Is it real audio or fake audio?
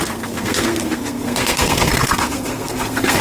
fake